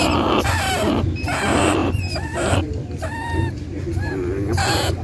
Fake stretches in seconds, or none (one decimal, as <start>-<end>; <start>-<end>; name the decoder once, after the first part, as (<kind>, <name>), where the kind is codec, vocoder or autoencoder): 1.8-2.6 (vocoder, BigVGAN v2)